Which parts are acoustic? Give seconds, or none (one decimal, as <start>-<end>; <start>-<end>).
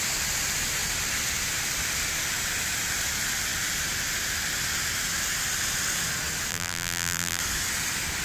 0.0-6.5; 7.4-8.2